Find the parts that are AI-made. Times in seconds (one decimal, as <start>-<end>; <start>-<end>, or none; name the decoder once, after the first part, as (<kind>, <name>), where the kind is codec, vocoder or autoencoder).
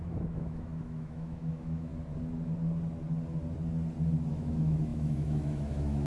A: 0.0-1.9 (autoencoder, DAC-VAE); 4.3-6.1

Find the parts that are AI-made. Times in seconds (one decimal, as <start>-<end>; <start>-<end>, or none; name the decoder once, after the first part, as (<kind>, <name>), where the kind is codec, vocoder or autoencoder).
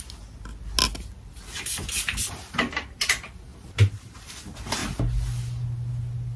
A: 3.5-4.3 (vocoder, BigVGAN v2)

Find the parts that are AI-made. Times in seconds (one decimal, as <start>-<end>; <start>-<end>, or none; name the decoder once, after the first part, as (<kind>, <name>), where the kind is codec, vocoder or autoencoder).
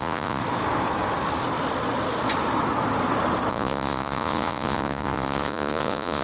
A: 0.0-0.4 (vocoder, Vocos); 3.5-6.2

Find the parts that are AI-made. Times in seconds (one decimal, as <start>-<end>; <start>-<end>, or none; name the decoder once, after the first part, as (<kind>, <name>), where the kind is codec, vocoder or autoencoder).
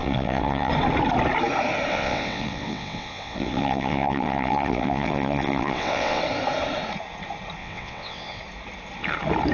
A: 0.0-0.7 (vocoder, WaveNeXt); 1.9-6.2; 7.6-8.4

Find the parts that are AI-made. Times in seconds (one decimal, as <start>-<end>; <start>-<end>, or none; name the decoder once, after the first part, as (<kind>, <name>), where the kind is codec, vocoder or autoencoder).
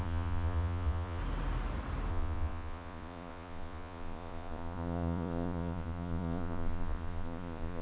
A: 0.0-1.2 (vocoder, Vocos); 2.1-7.8